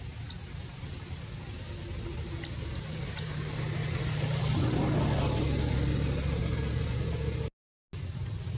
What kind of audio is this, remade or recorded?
recorded